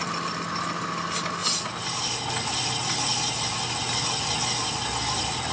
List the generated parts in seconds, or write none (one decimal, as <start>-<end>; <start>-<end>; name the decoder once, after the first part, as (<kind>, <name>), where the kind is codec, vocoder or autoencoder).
none